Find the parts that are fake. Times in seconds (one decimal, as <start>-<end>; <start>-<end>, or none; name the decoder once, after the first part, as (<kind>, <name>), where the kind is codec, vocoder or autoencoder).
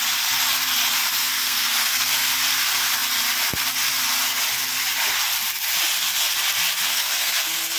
1.2-2.3 (codec, SNAC); 6.9-7.8